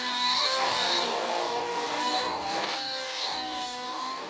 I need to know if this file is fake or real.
fake